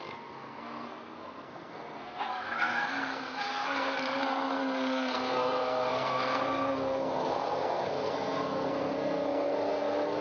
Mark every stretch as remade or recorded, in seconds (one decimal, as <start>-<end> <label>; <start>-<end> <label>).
0.0-10.2 remade

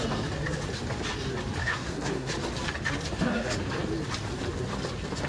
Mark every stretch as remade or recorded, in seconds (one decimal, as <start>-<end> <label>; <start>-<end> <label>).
0.0-1.6 recorded; 1.6-2.3 remade; 2.3-5.3 recorded

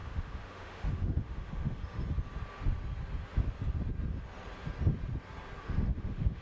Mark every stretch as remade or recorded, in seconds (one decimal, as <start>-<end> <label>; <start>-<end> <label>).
0.0-1.8 remade; 1.8-5.6 recorded; 5.6-6.4 remade

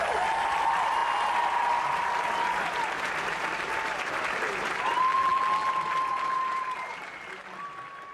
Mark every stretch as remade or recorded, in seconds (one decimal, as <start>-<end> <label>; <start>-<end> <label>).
0.0-5.1 recorded; 5.1-5.7 remade; 5.7-8.1 recorded

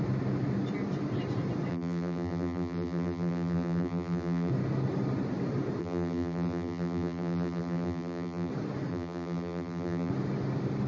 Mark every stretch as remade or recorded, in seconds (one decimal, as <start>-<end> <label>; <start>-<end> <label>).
0.0-1.7 recorded; 1.7-4.5 remade; 4.5-5.8 recorded; 5.8-8.5 remade; 8.5-8.9 recorded; 8.9-10.1 remade; 10.1-10.9 recorded

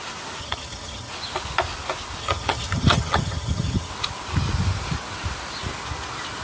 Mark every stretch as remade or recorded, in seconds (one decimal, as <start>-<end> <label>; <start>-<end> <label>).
0.0-0.4 recorded; 0.4-1.1 remade; 1.1-2.2 recorded; 2.2-3.9 remade; 3.9-6.4 recorded

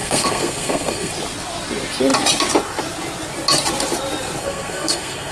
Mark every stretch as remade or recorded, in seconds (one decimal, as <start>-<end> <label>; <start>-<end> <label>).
0.0-1.1 remade; 1.1-4.4 recorded; 4.4-5.3 remade